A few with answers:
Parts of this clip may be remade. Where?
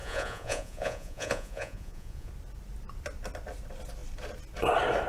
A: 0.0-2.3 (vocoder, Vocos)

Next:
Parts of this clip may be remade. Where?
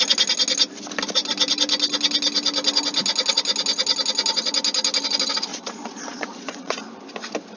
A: 5.5-6.8 (vocoder, Vocos)